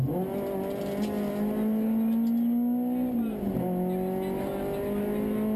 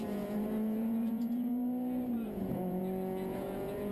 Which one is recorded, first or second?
first